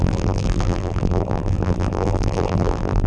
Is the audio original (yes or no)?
no